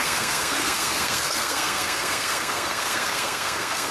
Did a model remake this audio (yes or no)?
yes